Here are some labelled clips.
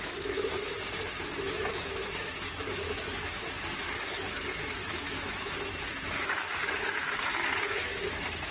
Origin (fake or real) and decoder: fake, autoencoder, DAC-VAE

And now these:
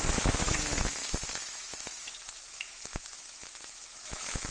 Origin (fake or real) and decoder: fake, autoencoder, DAC-VAE